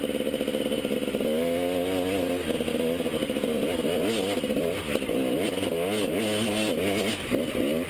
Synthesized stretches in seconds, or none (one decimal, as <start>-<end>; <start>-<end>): none